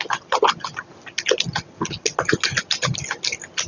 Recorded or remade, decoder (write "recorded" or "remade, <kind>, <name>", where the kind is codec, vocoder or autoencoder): recorded